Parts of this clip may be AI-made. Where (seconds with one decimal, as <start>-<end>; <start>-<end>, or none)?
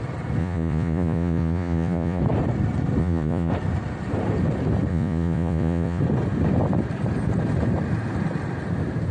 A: 0.4-2.2; 3.0-3.5; 4.9-6.0